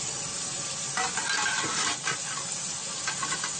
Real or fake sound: real